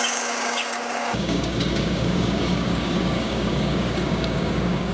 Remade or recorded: remade